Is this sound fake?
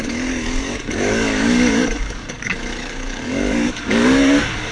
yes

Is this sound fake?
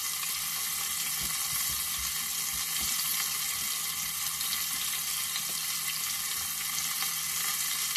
no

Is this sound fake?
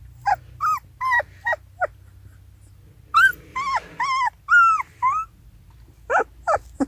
no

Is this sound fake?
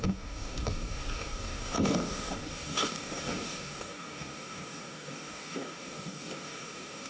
yes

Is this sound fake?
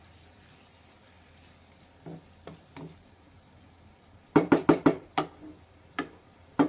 no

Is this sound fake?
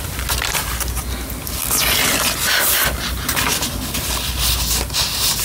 no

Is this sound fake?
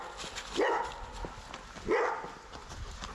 no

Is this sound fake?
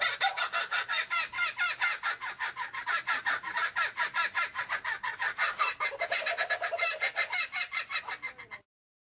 no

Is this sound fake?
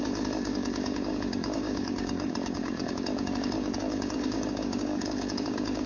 yes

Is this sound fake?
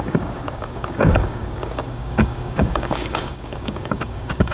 yes